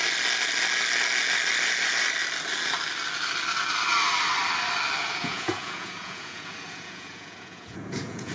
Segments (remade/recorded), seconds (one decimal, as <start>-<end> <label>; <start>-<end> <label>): 0.0-5.0 recorded; 5.0-8.3 remade